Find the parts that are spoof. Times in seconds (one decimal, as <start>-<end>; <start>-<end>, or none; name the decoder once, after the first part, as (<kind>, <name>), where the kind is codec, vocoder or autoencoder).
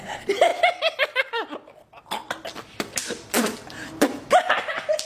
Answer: 0.0-0.5 (vocoder, BigVGAN v2); 2.6-5.1